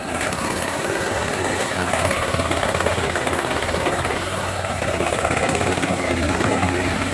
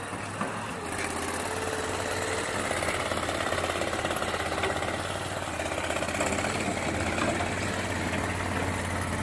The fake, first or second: first